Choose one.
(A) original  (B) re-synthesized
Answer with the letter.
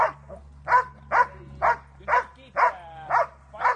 A